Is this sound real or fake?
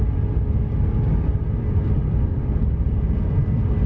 real